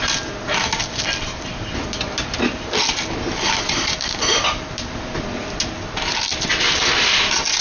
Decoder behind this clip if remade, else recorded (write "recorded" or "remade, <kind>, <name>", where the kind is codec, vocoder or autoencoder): recorded